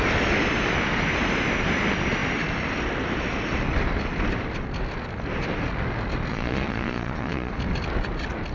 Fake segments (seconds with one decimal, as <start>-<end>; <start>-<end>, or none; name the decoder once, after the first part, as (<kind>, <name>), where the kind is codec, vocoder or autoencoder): 6.3-7.5 (vocoder, Vocos)